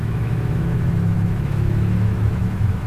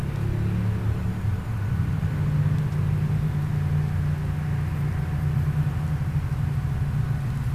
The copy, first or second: first